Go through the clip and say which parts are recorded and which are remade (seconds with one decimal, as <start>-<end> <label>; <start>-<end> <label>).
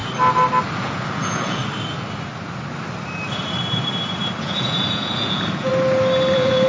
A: 0.0-0.8 recorded; 0.8-1.6 remade; 1.6-4.4 recorded; 4.4-5.7 remade; 5.7-6.3 recorded; 6.3-6.7 remade